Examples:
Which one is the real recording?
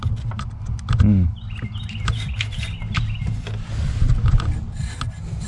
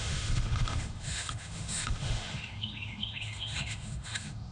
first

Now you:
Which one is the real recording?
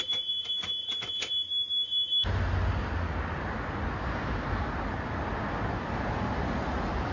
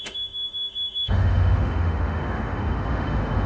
first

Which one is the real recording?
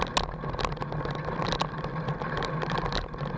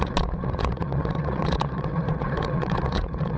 first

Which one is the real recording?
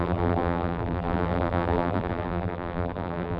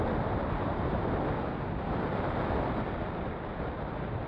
second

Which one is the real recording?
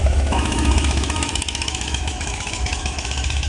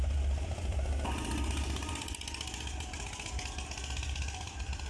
second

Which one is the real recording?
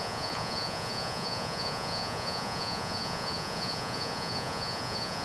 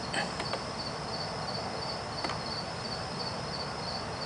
second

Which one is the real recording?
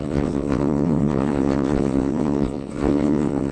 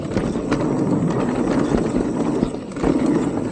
second